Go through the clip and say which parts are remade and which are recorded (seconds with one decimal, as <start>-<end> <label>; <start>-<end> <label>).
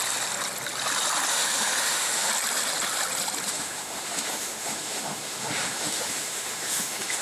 0.0-1.3 recorded; 1.3-2.3 remade; 2.3-3.5 recorded; 3.5-7.2 remade